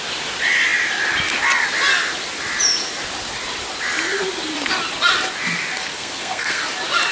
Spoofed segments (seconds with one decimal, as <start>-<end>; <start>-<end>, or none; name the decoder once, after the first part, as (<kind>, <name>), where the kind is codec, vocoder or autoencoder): 5.8-6.6 (codec, SNAC)